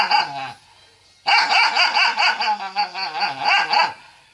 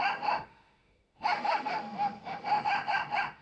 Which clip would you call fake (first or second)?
second